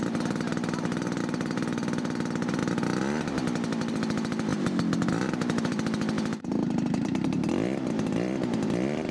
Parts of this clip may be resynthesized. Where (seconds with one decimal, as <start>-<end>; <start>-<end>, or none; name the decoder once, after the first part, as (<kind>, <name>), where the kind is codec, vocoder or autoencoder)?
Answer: 0.0-2.6 (vocoder, BigVGAN v2); 3.2-4.5; 5.6-9.1